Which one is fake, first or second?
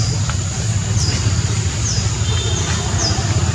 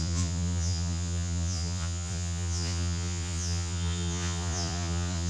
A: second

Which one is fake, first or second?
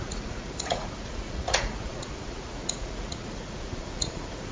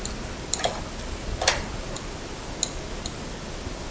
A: first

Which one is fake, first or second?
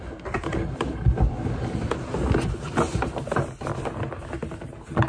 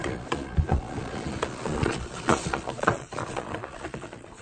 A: second